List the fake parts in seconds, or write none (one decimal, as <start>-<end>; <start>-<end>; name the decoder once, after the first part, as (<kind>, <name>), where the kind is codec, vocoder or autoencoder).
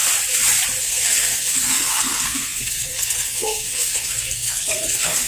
0.8-5.3 (codec, SNAC)